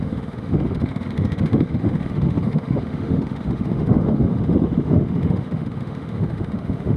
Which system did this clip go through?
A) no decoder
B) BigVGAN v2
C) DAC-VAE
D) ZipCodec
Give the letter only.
C